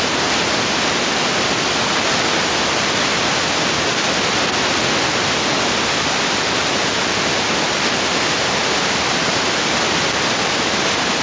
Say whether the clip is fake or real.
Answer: real